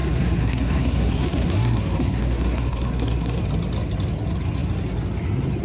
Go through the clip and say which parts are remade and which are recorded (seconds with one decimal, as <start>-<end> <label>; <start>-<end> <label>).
0.0-3.4 remade; 3.4-5.6 recorded